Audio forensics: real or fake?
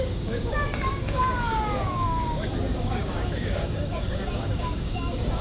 fake